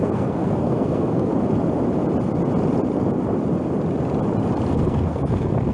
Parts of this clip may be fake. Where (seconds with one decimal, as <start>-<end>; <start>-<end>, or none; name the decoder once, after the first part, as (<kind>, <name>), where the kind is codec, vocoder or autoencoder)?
0.0-1.3 (codec, SNAC); 4.7-5.7